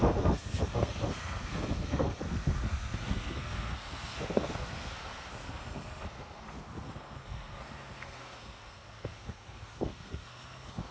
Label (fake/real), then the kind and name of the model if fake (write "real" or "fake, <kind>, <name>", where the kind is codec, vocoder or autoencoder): fake, codec, SNAC